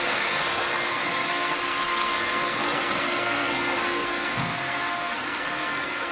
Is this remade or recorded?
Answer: remade